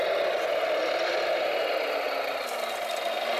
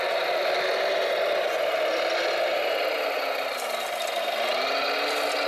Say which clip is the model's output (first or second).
first